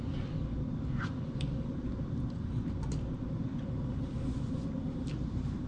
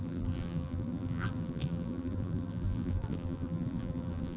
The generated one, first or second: second